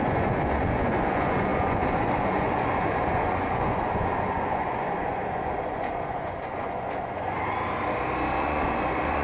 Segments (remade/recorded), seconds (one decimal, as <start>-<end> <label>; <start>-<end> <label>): 0.0-7.4 remade; 7.4-8.3 recorded; 8.3-9.2 remade